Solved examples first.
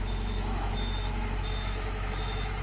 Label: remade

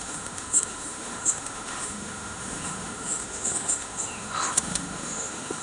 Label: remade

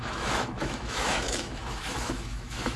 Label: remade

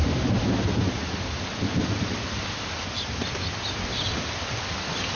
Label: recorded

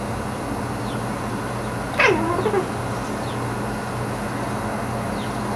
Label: recorded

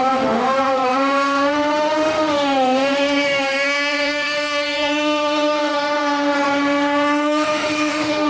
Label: remade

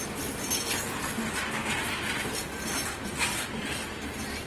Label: recorded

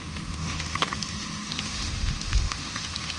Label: remade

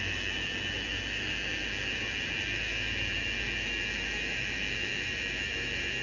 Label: remade